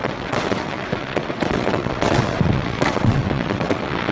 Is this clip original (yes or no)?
no